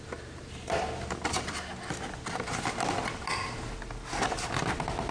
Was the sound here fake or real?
real